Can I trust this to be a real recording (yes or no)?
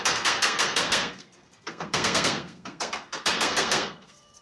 no